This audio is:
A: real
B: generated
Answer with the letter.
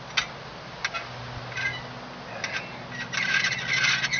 A